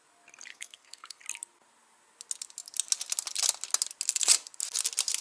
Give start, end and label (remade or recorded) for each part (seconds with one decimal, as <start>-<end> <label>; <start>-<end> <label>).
0.0-0.5 recorded; 0.5-1.2 remade; 1.2-5.2 recorded